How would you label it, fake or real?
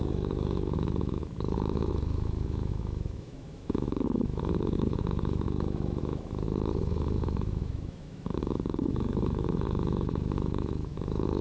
fake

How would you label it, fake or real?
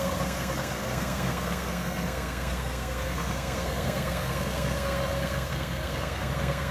fake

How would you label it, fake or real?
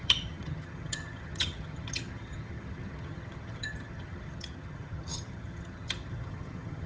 fake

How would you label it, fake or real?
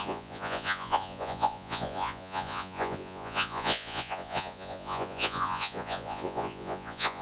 fake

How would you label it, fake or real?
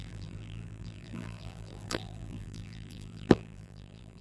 fake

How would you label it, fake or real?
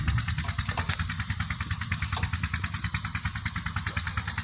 real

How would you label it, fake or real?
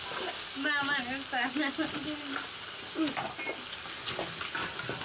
real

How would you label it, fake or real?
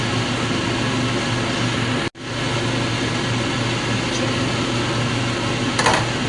real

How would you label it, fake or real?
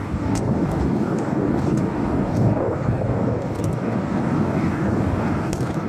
fake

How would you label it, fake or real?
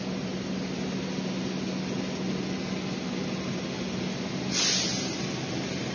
real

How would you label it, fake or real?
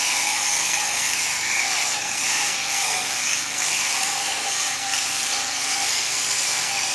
fake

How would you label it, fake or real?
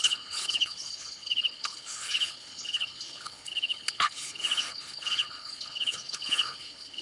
fake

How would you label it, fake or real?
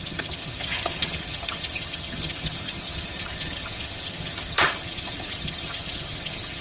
fake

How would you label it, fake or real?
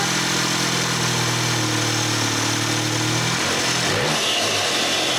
real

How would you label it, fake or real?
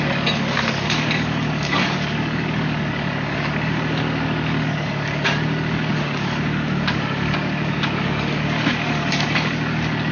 fake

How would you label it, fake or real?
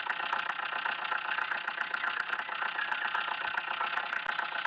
real